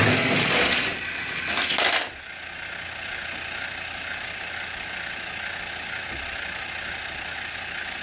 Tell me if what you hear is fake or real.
real